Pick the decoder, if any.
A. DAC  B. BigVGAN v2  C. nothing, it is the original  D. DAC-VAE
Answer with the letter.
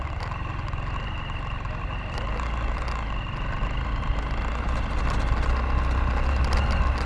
C